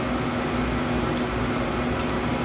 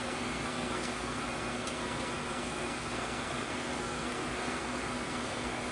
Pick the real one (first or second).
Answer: first